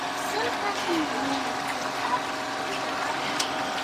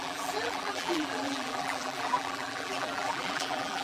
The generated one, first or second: second